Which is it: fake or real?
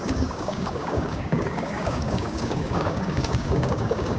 fake